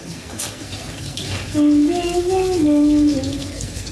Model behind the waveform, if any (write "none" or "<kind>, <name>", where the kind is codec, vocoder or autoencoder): codec, SNAC